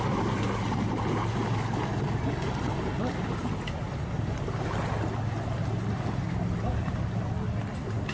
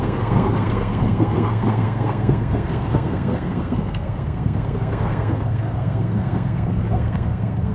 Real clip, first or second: first